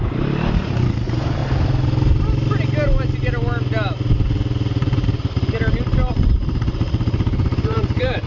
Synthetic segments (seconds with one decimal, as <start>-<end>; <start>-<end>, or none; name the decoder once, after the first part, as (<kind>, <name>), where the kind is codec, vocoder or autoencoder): 0.0-1.4 (vocoder, BigVGAN v2); 6.1-8.3